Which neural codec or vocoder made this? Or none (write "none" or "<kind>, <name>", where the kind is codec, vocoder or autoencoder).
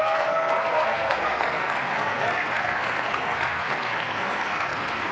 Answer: codec, SNAC